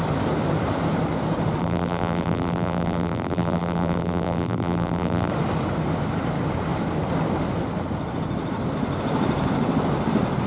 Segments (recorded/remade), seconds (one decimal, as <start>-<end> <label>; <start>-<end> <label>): 0.0-1.6 recorded; 1.6-5.3 remade; 5.3-10.5 recorded